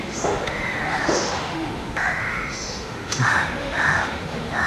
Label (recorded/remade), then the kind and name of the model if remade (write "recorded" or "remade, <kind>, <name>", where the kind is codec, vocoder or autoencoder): remade, autoencoder, DAC-VAE